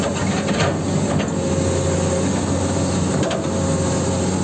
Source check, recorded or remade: recorded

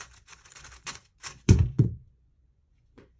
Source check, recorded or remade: remade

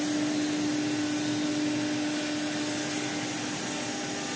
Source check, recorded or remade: recorded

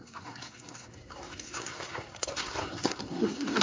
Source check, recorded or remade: remade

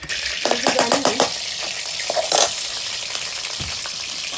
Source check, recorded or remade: recorded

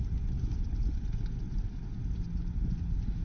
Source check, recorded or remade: recorded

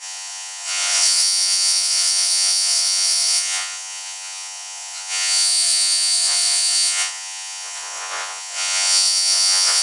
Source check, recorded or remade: remade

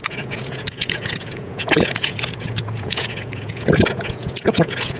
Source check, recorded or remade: remade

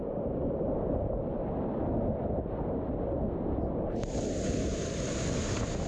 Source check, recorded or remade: recorded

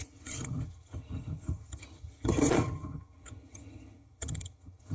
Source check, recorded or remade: remade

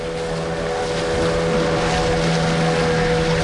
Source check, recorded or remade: recorded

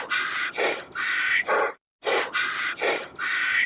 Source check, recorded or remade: recorded